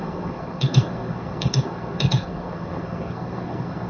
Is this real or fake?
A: fake